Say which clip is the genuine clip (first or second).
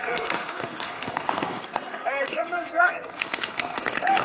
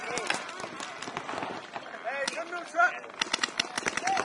second